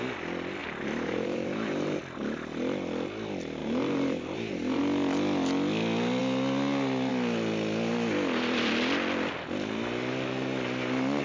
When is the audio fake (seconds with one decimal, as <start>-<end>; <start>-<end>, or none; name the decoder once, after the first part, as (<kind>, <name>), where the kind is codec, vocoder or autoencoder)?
0.6-2.0 (vocoder, BigVGAN v2); 3.6-4.8